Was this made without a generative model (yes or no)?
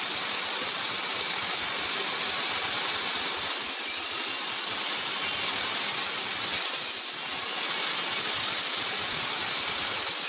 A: yes